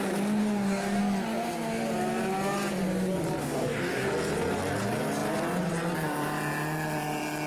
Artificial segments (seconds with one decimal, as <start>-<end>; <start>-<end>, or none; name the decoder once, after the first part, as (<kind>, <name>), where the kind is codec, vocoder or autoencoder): 0.4-1.0 (codec, DAC); 3.4-4.1